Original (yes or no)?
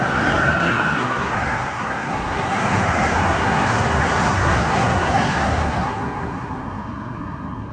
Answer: no